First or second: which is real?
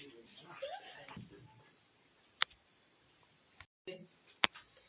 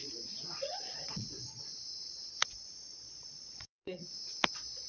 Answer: first